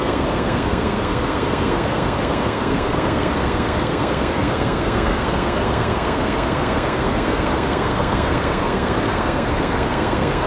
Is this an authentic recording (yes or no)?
no